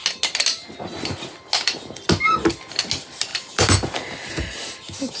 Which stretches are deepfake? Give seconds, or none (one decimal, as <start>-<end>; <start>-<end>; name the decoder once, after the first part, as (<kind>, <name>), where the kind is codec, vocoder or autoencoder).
none